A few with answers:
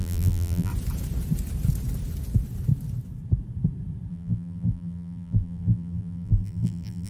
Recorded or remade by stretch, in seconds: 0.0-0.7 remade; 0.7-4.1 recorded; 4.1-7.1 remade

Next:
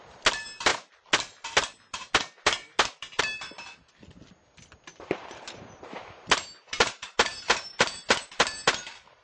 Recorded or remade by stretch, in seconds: 0.0-4.9 recorded; 4.9-7.5 remade; 7.5-9.2 recorded